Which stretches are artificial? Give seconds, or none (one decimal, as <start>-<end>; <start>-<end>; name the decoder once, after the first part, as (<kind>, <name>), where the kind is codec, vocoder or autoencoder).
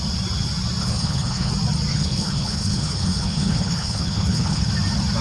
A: 0.8-1.5 (codec, HILCodec); 1.9-4.7